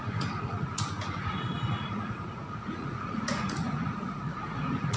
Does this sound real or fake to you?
fake